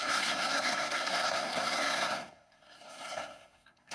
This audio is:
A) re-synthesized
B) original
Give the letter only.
A